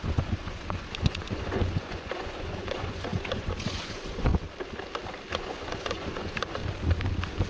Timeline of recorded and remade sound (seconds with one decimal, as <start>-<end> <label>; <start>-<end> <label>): 0.0-4.3 remade; 4.3-5.3 recorded; 5.3-6.6 remade; 6.6-7.5 recorded